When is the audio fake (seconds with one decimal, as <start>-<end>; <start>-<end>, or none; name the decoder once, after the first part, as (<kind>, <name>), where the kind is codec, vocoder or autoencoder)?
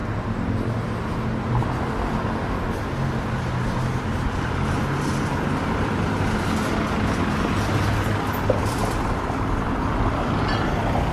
none